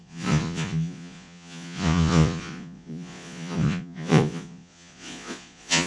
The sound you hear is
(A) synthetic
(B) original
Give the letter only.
A